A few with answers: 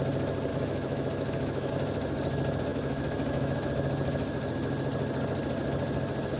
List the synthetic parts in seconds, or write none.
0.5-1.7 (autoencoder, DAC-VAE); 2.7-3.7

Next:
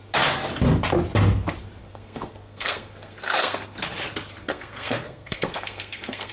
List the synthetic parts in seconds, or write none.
1.8-3.8 (codec, SNAC); 4.5-6.3

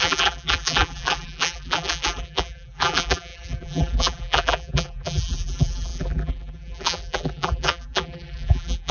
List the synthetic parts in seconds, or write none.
0.0-8.9 (vocoder, BigVGAN v2)

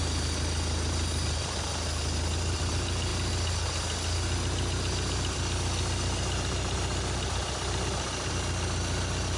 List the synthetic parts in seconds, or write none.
none

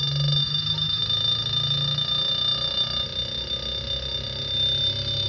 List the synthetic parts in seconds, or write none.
0.4-1.0 (autoencoder, DAC-VAE)

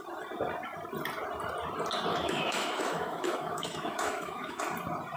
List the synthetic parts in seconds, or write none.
2.1-4.6 (autoencoder, DAC-VAE)

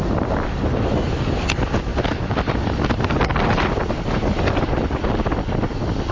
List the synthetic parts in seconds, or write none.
none